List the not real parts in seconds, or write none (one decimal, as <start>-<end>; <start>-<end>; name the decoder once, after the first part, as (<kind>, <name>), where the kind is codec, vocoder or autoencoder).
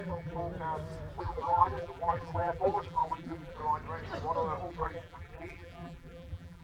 0.0-0.4 (vocoder, BigVGAN v2); 1.2-3.6; 4.7-6.6